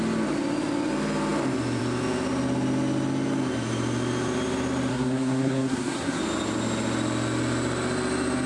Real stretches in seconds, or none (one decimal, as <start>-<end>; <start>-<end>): 0.0-4.9; 6.2-8.5

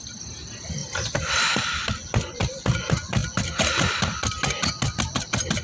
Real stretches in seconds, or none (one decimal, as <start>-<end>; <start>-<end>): 0.0-5.6

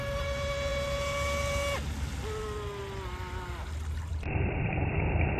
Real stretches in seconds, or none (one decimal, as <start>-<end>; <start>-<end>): 0.0-5.4

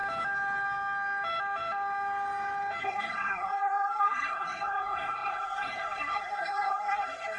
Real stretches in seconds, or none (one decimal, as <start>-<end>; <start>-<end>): 0.0-2.8

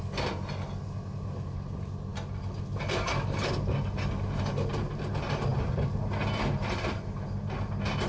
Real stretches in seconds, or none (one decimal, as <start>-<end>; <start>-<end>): 0.0-8.1